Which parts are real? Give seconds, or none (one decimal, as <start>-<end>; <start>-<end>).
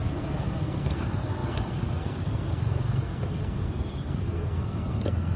none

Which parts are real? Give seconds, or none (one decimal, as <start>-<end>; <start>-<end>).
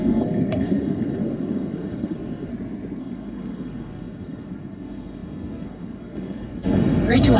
2.5-3.0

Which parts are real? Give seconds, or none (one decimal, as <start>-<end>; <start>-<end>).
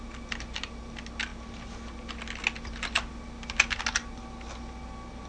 0.0-5.3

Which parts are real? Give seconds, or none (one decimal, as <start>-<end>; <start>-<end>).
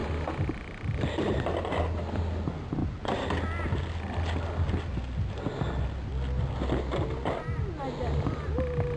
0.0-9.0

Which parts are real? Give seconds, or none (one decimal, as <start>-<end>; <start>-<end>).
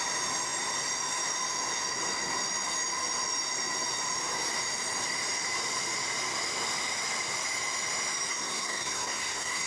0.0-8.3